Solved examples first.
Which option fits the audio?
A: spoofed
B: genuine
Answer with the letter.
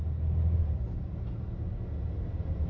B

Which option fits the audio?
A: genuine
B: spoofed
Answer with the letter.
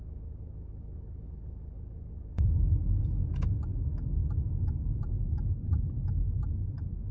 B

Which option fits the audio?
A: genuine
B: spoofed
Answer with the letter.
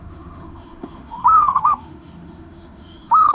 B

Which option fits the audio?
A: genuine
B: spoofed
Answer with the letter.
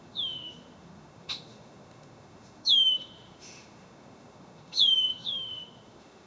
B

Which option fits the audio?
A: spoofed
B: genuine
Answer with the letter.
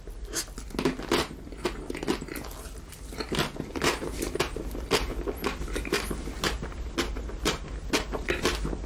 B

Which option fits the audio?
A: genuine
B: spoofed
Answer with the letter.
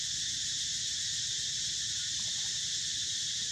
A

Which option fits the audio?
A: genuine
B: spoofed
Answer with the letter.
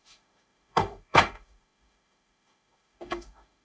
B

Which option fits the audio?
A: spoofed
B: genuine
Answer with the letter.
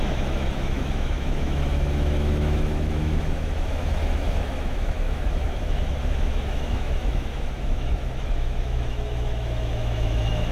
A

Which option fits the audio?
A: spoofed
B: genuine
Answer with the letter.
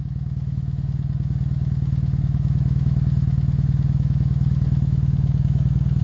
A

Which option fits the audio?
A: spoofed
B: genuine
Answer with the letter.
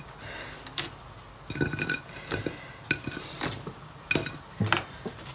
B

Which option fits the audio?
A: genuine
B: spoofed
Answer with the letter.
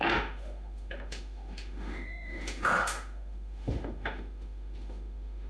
B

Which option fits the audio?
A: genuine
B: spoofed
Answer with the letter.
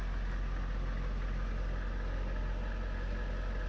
A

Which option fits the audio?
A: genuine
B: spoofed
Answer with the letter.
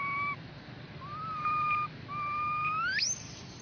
A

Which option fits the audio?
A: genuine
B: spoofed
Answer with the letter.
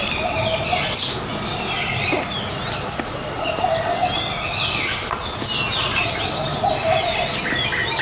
A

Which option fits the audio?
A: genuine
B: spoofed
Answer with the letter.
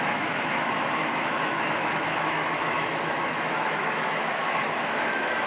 B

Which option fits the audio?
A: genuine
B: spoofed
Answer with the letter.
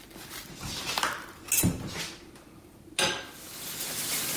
A